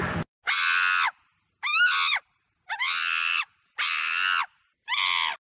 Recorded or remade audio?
recorded